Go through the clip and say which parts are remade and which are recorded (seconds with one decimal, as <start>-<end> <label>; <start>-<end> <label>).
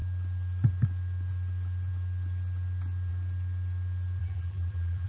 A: 0.0-4.2 recorded; 4.2-5.1 remade